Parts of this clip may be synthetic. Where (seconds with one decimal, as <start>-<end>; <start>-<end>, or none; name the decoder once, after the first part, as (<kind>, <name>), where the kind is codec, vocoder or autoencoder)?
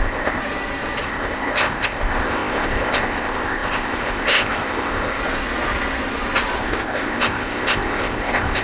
0.0-0.4 (codec, ZipCodec); 1.0-5.2; 6.6-8.6